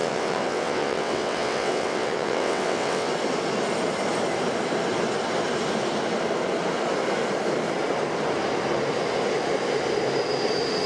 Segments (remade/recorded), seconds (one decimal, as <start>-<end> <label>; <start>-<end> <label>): 0.0-3.1 remade; 3.1-10.9 recorded